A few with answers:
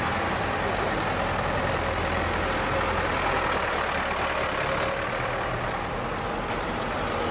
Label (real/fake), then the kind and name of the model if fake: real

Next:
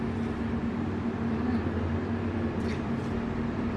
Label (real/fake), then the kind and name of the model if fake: real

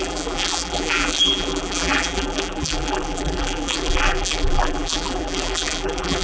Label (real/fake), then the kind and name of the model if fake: fake, vocoder, BigVGAN v2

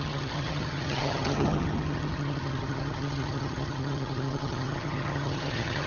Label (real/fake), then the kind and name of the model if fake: fake, vocoder, HiFi-GAN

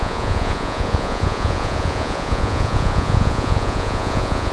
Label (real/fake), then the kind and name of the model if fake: fake, vocoder, Vocos